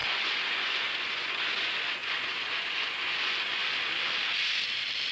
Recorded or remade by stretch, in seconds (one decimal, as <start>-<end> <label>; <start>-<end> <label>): 0.0-3.6 remade; 3.6-5.1 recorded